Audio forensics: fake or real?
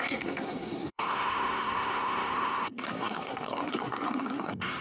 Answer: fake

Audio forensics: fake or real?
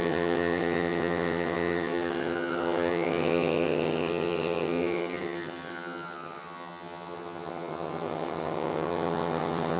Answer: fake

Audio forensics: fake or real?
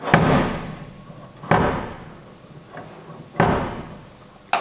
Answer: real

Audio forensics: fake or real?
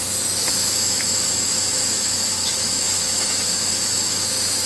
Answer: fake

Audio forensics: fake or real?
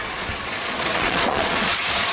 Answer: fake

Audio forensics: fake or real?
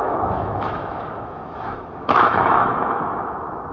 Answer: fake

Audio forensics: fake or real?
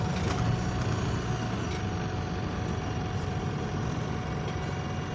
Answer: real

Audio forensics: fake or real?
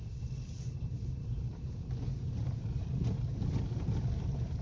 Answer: real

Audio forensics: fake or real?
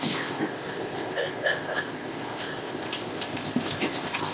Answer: fake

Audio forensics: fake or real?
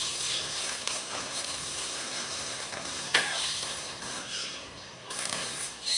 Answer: fake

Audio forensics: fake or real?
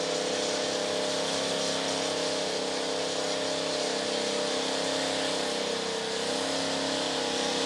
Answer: real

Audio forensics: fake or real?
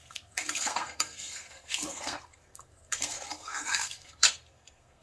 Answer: fake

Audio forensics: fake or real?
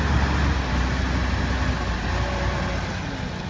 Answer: real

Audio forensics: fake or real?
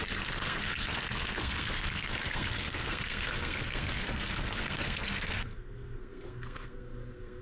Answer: fake